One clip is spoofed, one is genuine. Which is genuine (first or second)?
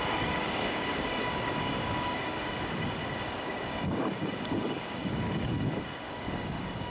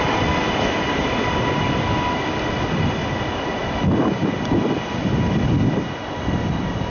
second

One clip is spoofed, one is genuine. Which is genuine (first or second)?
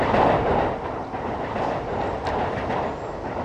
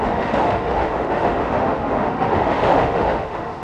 first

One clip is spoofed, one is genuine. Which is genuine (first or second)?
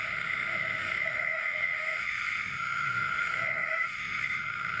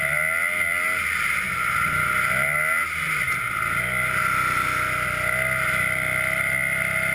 second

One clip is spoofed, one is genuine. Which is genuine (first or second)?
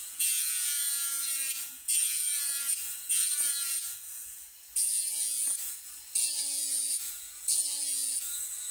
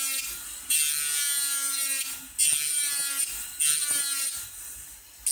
second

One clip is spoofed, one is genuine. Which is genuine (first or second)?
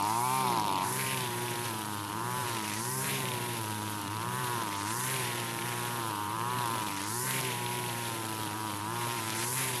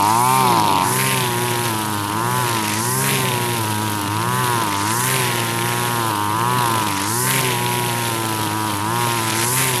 second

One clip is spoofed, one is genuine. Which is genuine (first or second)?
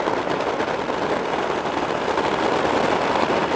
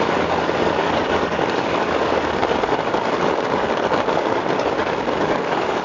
first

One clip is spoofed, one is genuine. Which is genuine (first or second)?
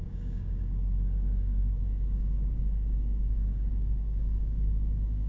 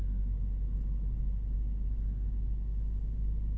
second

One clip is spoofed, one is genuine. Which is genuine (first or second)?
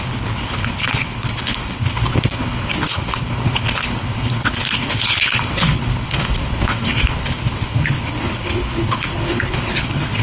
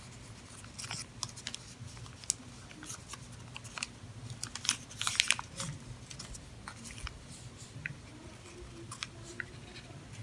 second